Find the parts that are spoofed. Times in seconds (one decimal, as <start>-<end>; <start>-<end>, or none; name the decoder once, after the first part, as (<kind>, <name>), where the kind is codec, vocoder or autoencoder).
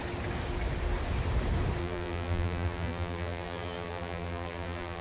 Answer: 1.8-5.0 (vocoder, BigVGAN v2)